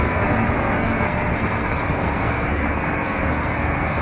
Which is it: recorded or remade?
remade